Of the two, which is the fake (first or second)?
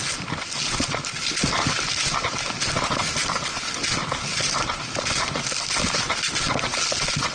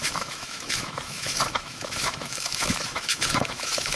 second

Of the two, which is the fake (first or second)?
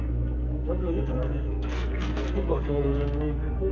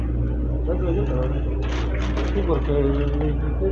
first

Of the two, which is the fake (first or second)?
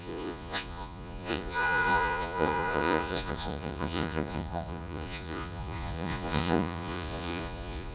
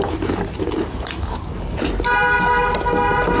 first